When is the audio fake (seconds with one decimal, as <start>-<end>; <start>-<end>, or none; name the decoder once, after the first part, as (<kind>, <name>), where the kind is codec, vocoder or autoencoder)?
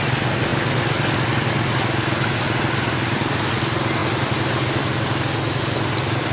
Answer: none